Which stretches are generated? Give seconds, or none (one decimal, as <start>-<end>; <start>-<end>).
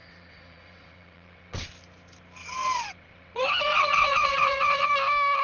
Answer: 0.0-1.7; 2.4-4.9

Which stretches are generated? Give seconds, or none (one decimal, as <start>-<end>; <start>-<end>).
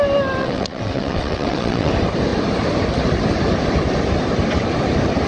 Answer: 0.4-1.9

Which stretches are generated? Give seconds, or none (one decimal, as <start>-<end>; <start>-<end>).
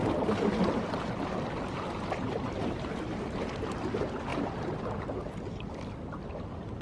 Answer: none